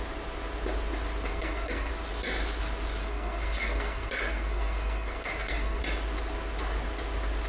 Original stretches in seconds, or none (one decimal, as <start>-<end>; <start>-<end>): 0.0-1.3; 1.9-3.0; 5.8-7.5